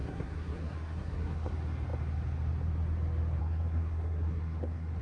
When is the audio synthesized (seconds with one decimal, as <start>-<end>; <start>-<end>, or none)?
0.0-1.5; 3.4-5.0